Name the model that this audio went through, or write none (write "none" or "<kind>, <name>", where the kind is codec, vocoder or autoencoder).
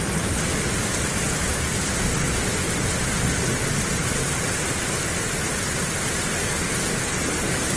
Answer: none